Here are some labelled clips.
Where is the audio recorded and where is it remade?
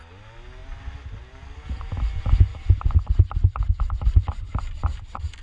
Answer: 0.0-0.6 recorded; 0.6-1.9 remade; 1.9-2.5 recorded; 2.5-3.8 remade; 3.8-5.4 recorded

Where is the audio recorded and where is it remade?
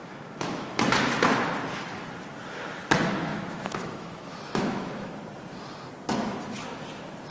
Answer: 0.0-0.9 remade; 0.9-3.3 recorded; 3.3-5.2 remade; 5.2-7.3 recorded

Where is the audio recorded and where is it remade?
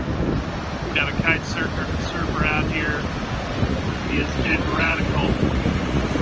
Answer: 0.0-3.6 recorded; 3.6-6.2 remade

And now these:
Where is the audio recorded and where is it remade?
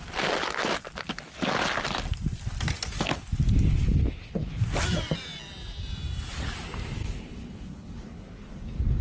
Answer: 0.0-3.8 recorded; 3.8-4.6 remade; 4.6-7.0 recorded; 7.0-9.0 remade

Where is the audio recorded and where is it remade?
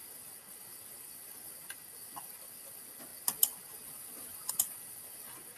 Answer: 0.0-5.6 recorded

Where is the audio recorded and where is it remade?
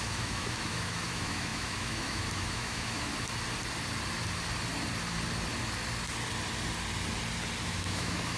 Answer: 0.0-3.1 remade; 3.1-7.6 recorded; 7.6-8.4 remade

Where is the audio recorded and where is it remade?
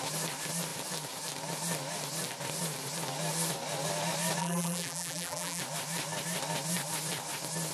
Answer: 0.0-4.4 recorded; 4.4-5.6 remade; 5.6-7.7 recorded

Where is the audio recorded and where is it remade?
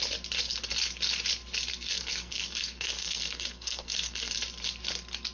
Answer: 0.0-1.7 recorded; 1.7-4.3 remade; 4.3-5.3 recorded